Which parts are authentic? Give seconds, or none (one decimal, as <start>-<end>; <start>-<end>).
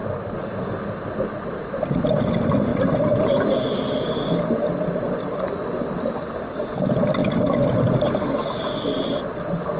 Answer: 0.0-2.7; 4.8-9.8